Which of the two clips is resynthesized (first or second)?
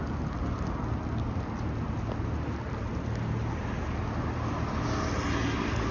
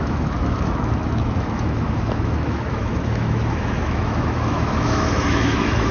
second